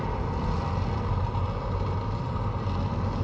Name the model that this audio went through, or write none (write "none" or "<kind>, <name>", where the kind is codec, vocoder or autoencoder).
none